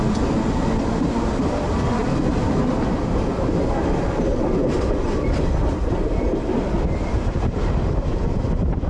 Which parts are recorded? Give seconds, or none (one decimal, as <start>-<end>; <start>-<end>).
0.0-8.9